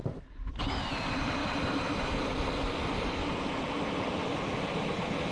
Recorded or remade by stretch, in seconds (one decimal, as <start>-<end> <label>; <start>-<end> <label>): 0.0-0.9 remade; 0.9-3.2 recorded; 3.2-4.6 remade; 4.6-5.3 recorded